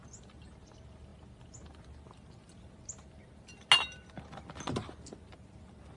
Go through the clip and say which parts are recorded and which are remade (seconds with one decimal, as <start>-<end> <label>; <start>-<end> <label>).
0.0-6.0 recorded